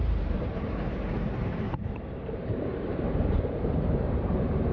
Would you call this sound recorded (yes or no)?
no